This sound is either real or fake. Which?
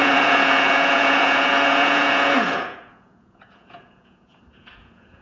fake